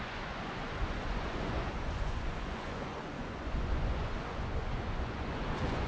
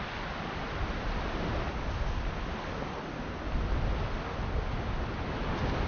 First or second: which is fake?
first